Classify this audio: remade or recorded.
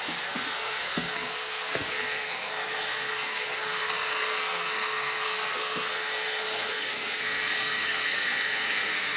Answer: remade